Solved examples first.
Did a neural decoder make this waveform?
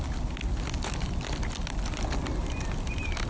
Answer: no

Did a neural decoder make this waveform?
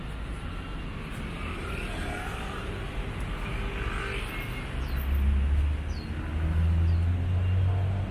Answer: no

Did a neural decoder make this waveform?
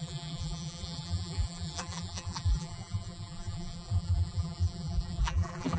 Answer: yes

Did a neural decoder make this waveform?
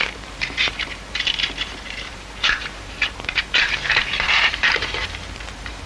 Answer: yes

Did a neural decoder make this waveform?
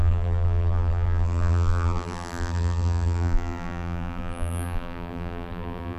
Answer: yes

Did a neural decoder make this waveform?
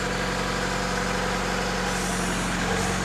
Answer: no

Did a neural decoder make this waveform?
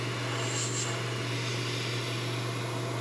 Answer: no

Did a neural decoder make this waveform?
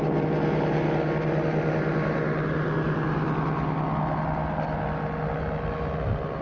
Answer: no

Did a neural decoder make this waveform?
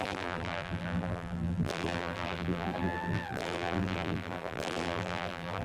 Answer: yes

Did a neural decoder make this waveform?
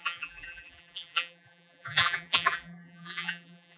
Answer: yes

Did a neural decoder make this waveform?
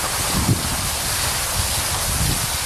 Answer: yes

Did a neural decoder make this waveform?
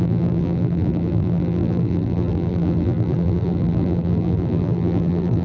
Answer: yes